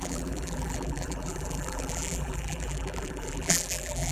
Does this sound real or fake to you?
fake